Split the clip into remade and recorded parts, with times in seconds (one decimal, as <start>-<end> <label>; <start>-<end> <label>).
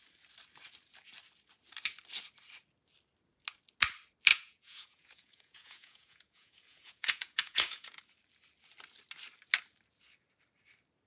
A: 0.0-4.3 recorded; 4.3-8.0 remade; 8.0-11.1 recorded